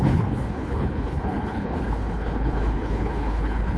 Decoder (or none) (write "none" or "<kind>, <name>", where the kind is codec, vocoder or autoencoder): codec, HILCodec